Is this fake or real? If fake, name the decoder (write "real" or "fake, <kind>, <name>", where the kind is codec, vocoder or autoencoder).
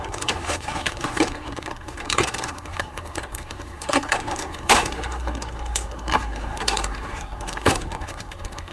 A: fake, codec, SNAC